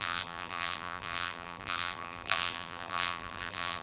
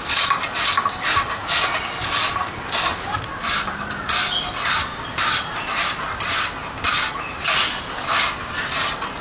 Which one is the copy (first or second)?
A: first